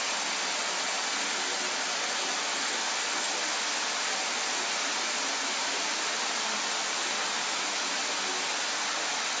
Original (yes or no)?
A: yes